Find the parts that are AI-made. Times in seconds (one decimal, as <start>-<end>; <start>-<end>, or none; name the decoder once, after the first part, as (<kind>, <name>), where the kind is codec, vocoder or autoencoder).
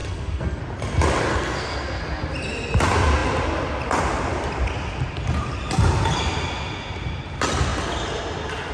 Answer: 0.0-0.6 (codec, SNAC); 1.3-2.0